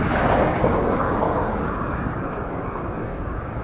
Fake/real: fake